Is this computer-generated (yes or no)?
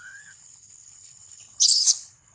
yes